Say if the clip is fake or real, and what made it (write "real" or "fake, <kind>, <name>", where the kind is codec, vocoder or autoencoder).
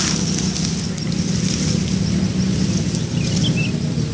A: real